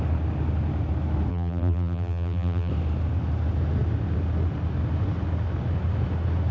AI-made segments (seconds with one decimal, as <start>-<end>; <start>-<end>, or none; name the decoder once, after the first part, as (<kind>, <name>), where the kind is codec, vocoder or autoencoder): 1.3-2.7 (vocoder, BigVGAN v2)